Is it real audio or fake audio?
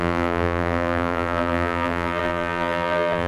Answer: fake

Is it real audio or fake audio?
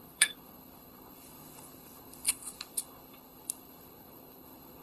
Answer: fake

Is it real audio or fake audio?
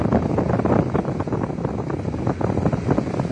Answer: real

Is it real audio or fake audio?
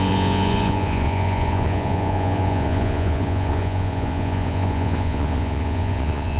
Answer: fake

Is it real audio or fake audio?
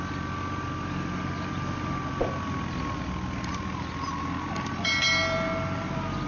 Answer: real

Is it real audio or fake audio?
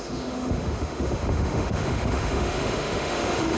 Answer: fake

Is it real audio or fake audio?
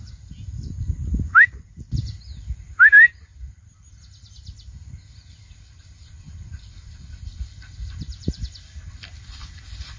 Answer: fake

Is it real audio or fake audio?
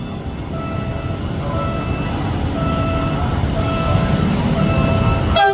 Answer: real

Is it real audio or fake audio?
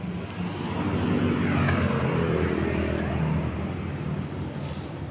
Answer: real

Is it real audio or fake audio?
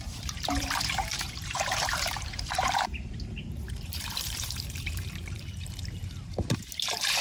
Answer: fake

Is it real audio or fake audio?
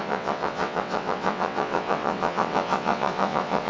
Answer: fake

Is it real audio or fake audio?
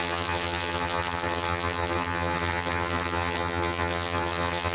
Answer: fake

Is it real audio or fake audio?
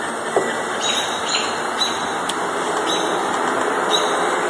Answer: real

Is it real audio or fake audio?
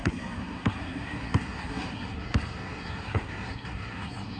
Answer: fake